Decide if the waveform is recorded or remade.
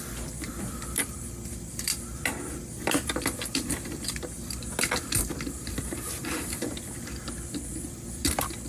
recorded